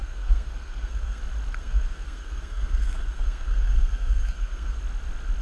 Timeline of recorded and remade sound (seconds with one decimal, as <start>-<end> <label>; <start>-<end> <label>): 0.0-1.2 remade; 1.2-1.6 recorded; 1.6-4.8 remade; 4.8-5.4 recorded